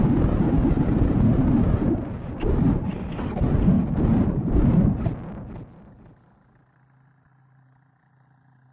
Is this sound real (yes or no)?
yes